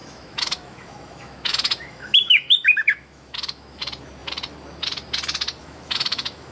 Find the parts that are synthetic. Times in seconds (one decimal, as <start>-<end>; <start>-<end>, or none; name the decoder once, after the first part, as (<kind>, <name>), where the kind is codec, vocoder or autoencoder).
0.0-3.8 (autoencoder, DAC-VAE); 5.6-6.5